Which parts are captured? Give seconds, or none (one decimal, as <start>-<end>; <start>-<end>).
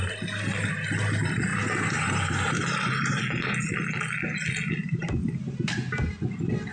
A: 0.0-1.5; 3.2-4.8; 5.6-6.7